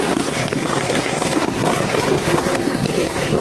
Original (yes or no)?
no